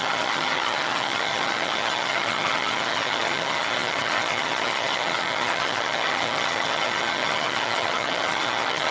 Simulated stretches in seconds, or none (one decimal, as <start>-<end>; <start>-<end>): 0.0-8.9